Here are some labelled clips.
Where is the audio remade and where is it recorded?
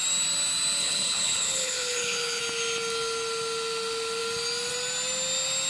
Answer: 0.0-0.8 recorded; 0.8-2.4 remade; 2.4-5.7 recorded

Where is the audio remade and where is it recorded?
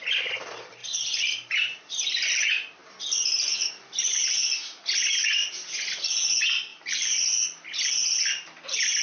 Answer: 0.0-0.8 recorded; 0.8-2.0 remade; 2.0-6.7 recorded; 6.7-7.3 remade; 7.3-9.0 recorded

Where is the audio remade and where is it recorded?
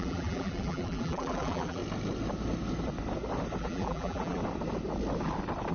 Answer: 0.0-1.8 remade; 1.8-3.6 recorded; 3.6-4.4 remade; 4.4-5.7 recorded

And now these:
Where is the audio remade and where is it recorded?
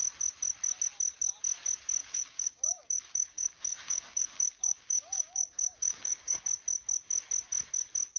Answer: 0.0-2.0 recorded; 2.0-6.4 remade; 6.4-8.2 recorded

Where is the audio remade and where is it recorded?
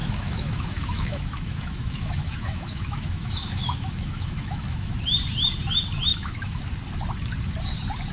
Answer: 0.0-4.9 remade; 4.9-6.1 recorded; 6.1-6.6 remade; 6.6-8.1 recorded